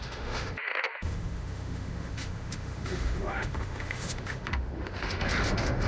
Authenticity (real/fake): fake